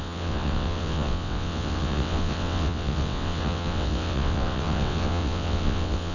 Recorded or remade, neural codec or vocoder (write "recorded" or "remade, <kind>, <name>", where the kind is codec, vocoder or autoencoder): remade, vocoder, WaveNeXt